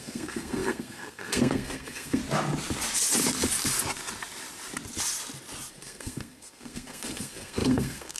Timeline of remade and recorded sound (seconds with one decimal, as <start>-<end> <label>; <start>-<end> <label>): 0.0-2.2 remade; 2.2-5.7 recorded; 5.7-8.2 remade